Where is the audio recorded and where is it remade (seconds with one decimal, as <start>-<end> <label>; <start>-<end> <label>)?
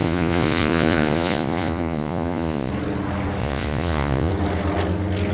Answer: 0.0-2.7 remade; 2.7-3.4 recorded; 3.4-4.3 remade; 4.3-5.3 recorded